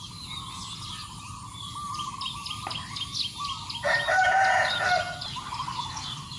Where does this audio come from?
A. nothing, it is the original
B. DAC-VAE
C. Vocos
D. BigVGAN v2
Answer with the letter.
A